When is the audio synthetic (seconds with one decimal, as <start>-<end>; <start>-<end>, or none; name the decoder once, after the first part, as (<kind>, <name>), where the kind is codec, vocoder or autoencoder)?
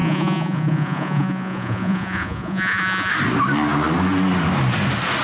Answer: 0.0-3.1 (vocoder, Vocos)